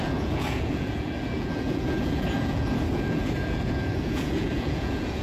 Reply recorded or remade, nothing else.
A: remade